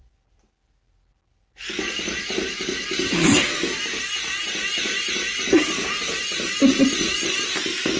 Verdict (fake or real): real